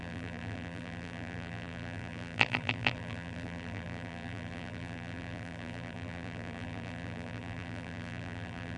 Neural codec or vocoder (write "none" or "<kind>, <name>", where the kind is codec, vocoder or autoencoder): vocoder, BigVGAN v2